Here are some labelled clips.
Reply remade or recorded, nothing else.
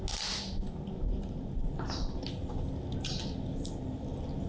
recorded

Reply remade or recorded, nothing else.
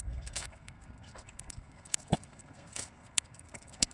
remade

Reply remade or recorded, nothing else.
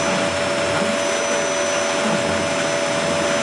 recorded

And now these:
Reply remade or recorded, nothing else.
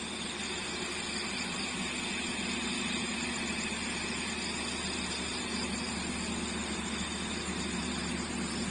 recorded